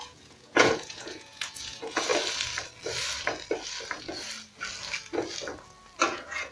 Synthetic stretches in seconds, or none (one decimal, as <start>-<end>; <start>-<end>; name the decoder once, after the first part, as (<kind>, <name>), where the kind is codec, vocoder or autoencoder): 0.0-2.1 (vocoder, Vocos); 6.0-6.5